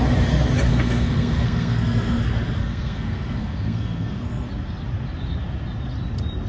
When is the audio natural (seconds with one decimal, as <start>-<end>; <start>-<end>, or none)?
0.0-0.7; 2.2-2.6; 4.5-6.5